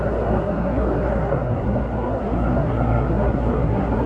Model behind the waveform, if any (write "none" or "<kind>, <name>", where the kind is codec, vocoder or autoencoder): codec, SNAC